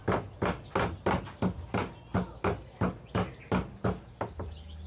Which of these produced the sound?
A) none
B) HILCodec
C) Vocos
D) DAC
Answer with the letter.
A